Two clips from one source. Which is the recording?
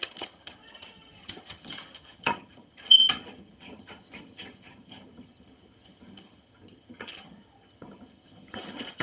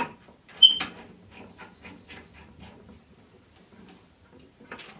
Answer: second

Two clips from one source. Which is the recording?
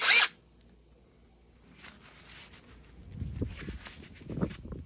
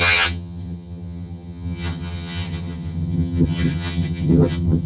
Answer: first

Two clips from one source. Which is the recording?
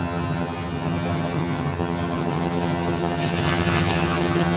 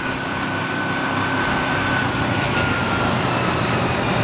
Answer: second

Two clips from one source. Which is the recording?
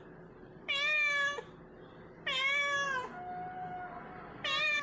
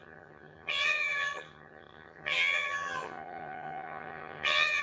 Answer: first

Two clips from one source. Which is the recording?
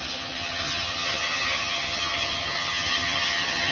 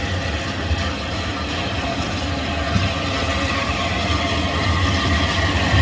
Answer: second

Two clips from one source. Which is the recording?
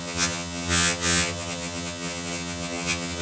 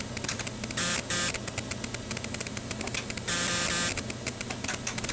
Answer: second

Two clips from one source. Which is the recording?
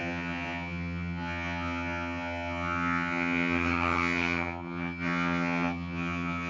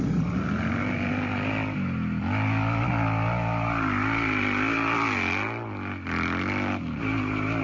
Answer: second